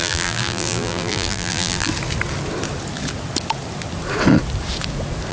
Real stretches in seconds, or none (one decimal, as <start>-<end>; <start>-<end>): 1.9-5.3